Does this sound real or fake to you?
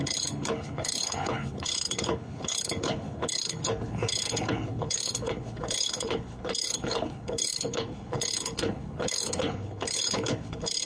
fake